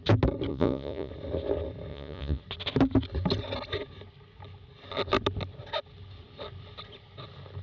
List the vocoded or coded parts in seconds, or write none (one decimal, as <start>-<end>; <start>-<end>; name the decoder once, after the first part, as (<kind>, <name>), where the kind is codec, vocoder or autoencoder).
0.5-1.1 (vocoder, Vocos); 1.9-2.4